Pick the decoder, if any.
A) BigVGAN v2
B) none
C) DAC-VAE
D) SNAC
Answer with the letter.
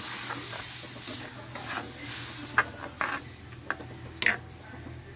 B